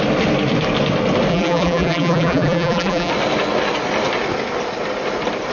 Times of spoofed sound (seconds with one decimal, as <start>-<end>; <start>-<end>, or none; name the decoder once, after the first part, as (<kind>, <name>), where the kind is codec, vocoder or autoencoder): 1.3-3.1 (vocoder, BigVGAN v2)